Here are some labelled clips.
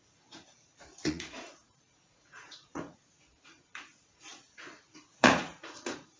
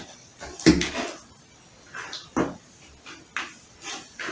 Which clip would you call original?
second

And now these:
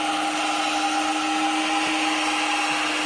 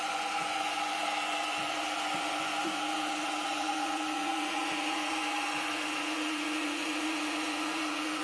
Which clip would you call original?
first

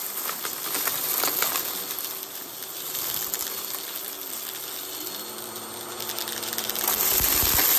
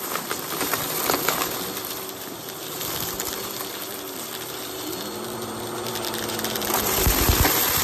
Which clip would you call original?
first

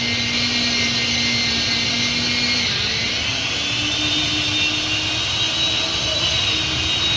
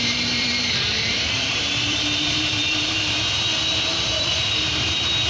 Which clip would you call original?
first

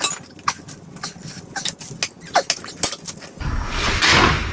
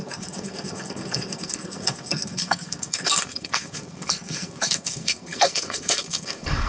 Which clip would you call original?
first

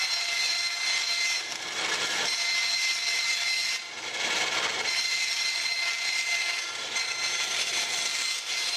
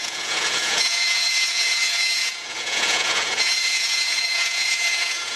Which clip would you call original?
first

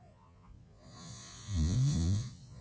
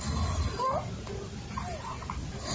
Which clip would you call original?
second